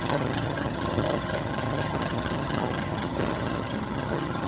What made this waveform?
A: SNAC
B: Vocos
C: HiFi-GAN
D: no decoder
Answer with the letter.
C